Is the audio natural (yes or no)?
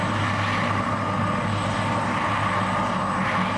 yes